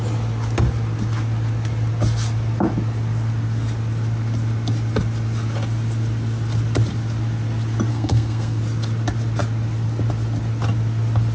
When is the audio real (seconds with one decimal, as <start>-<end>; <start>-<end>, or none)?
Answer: 0.0-7.9; 8.6-11.3